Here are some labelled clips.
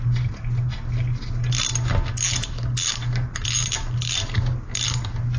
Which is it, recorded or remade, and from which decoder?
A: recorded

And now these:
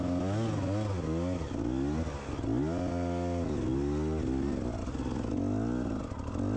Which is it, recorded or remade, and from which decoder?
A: recorded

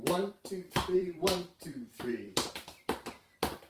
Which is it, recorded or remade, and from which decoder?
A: remade, vocoder, BigVGAN v2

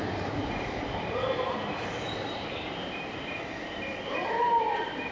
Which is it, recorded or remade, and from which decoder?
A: remade, vocoder, BigVGAN v2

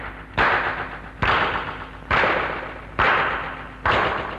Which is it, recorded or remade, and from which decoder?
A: recorded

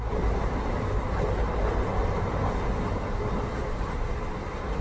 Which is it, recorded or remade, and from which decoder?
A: recorded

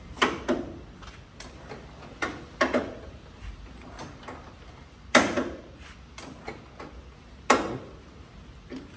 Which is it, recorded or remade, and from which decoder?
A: recorded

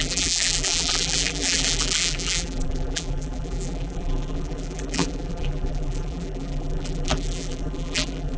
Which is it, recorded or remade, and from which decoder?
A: remade, vocoder, BigVGAN v2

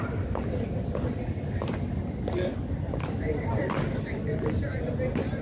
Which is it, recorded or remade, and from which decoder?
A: recorded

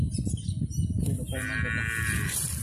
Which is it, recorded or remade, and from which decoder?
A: recorded